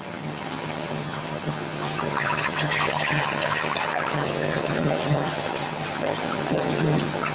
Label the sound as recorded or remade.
remade